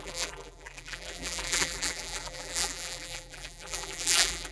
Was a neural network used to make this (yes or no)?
yes